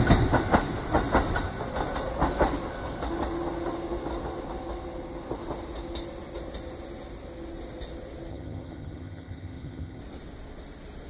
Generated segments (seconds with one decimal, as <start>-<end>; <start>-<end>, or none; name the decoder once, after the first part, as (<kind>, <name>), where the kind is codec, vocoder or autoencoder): 8.3-10.0 (vocoder, HiFi-GAN)